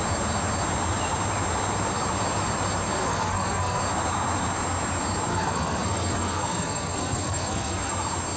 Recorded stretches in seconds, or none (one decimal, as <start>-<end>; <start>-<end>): 0.0-3.0; 3.8-5.3; 7.9-8.4